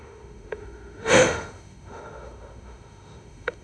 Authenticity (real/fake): fake